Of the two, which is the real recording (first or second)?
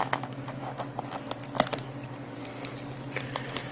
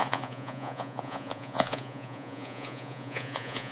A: first